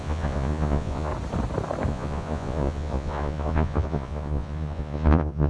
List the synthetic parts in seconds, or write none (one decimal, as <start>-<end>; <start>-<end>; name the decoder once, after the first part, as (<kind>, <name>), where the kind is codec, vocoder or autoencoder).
0.0-1.1 (vocoder, Vocos); 1.9-5.5